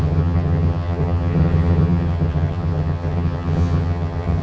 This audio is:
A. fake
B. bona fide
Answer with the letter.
A